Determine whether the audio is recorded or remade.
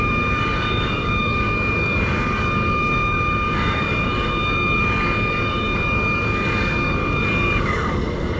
remade